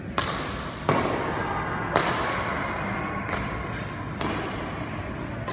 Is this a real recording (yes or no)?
yes